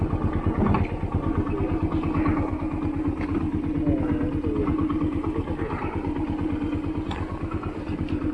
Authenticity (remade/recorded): recorded